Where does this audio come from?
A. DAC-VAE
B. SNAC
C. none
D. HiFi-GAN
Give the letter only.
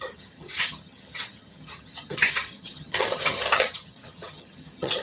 D